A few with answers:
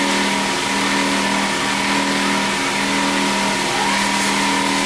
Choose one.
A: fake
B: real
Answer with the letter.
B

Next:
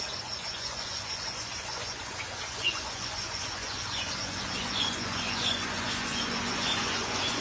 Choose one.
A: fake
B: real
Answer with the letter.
A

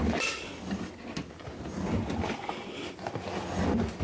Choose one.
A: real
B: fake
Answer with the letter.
A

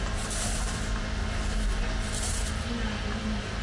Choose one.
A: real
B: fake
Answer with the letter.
A